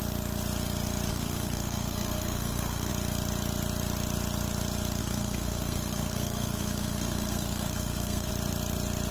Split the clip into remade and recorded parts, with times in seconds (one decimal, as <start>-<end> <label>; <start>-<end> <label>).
0.0-1.1 recorded; 1.1-2.9 remade; 2.9-5.0 recorded; 5.0-8.3 remade; 8.3-9.1 recorded